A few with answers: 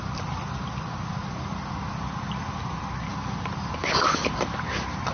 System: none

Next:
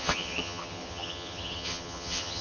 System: vocoder, HiFi-GAN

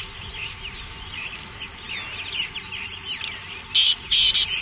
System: none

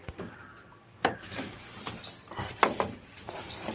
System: none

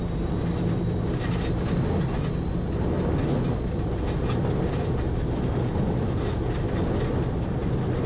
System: none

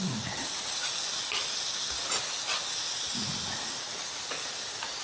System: none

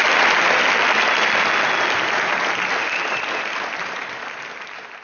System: none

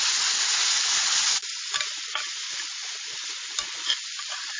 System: none